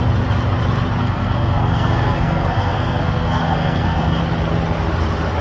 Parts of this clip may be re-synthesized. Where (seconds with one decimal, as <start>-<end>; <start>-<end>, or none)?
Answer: 1.0-4.2